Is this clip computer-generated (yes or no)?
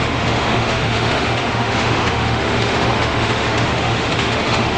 yes